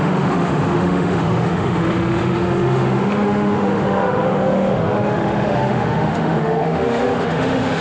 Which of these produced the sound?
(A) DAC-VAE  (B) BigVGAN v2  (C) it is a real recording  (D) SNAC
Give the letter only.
A